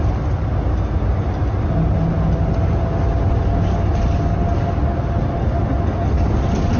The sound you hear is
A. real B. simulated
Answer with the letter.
A